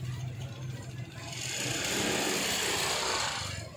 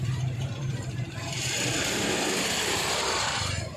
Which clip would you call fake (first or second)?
second